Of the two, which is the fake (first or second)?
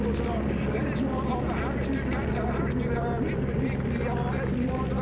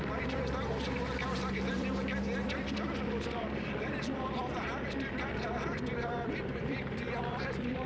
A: second